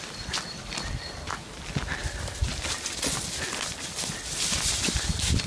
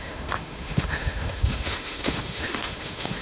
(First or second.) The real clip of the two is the first